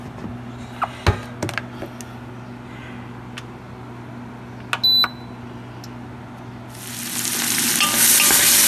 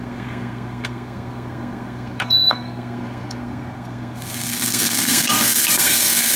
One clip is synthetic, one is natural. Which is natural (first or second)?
first